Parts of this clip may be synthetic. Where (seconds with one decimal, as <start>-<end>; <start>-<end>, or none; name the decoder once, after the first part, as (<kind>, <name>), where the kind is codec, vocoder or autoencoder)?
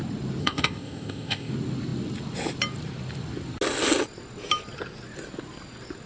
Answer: 0.4-1.5 (codec, ZipCodec)